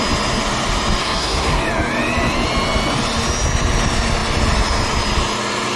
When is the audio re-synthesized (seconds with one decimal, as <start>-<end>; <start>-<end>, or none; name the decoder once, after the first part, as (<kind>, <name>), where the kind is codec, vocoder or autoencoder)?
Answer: 1.0-1.6 (codec, SNAC)